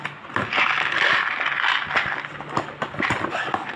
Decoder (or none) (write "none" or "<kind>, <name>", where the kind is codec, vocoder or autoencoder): none